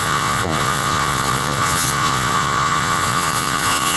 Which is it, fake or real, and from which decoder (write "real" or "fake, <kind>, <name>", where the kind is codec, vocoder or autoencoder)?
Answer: fake, vocoder, Vocos